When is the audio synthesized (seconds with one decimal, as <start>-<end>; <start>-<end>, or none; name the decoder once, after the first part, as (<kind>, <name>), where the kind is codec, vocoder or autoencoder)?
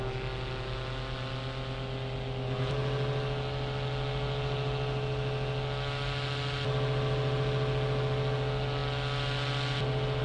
none